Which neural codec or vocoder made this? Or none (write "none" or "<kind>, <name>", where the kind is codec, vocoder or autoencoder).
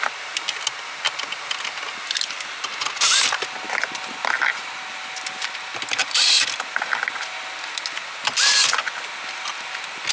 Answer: none